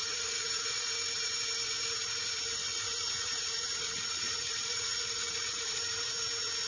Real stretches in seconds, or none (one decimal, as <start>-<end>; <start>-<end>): 0.9-2.6; 5.8-6.7